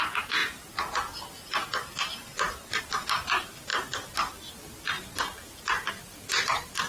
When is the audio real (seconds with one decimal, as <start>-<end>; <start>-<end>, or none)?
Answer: 0.0-6.9